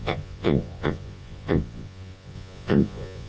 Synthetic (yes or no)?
yes